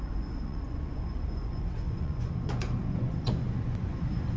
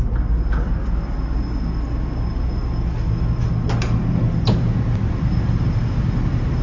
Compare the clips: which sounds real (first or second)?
second